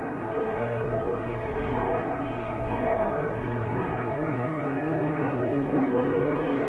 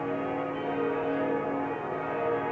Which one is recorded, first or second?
second